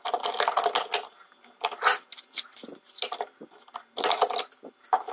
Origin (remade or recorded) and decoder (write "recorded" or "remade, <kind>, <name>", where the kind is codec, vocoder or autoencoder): recorded